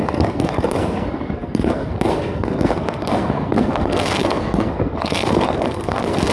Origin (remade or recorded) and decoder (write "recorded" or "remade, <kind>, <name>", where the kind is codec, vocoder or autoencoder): remade, codec, SNAC